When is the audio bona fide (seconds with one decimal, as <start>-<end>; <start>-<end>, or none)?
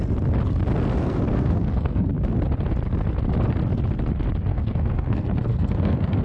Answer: 0.0-1.0; 2.1-4.5